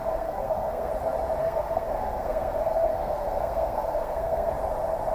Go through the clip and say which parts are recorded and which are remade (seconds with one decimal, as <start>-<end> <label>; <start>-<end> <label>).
0.0-0.9 remade; 0.9-1.4 recorded; 1.4-4.5 remade; 4.5-5.1 recorded